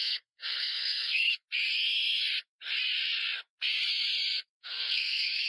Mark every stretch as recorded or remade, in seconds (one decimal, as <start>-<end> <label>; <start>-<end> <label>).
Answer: 0.0-1.3 remade; 1.3-4.6 recorded; 4.6-5.5 remade